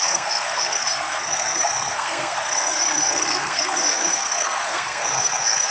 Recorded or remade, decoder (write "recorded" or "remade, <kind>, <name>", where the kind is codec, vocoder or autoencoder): remade, codec, SNAC